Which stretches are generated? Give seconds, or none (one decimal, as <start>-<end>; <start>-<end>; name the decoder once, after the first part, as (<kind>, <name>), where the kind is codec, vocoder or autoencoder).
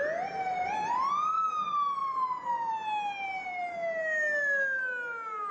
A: none